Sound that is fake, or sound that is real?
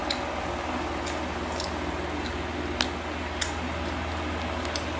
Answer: real